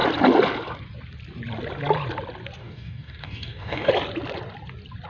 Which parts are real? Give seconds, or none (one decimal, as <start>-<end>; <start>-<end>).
0.0-2.6; 3.9-5.1